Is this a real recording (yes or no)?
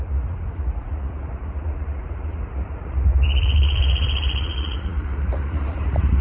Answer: no